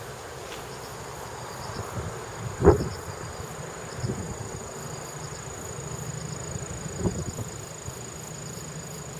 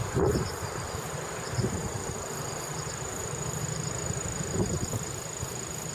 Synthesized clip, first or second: second